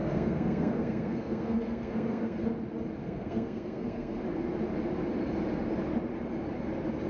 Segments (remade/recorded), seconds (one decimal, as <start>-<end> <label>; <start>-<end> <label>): 0.0-2.4 remade; 2.4-3.0 recorded; 3.0-4.2 remade; 4.2-7.1 recorded